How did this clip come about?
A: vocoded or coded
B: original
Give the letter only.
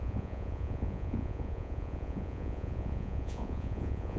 A